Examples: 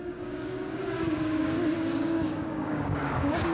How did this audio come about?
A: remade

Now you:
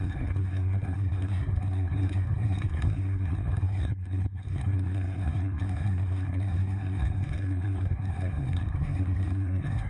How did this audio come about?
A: remade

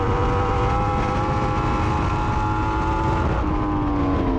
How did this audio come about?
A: recorded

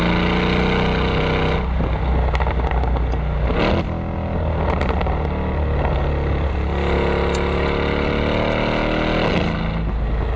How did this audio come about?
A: recorded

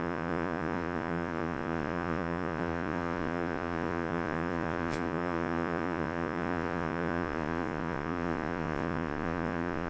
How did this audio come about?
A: remade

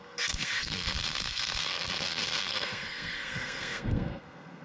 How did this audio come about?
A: remade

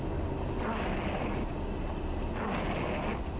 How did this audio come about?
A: recorded